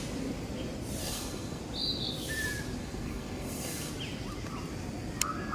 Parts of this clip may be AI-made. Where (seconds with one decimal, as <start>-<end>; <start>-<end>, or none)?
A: 1.0-1.6; 2.8-3.9